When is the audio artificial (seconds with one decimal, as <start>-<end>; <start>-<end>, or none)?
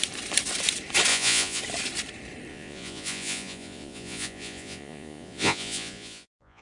1.1-1.6; 2.5-6.6